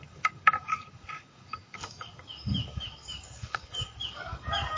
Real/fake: fake